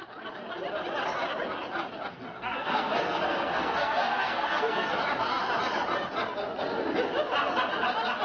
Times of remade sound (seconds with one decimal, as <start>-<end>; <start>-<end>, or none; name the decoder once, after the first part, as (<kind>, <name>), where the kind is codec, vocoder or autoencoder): 2.1-5.0 (codec, SNAC)